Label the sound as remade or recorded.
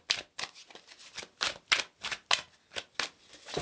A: recorded